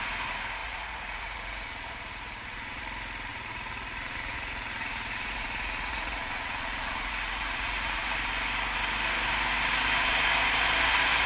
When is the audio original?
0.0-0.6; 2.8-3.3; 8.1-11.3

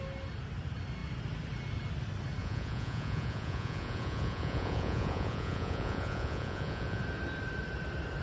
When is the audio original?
0.0-2.4; 7.0-8.2